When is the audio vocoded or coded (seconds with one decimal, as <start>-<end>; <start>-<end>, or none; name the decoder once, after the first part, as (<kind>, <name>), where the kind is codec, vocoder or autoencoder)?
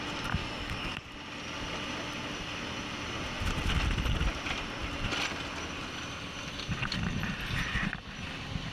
0.4-1.1 (codec, DAC)